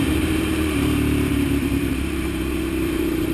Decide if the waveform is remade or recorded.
remade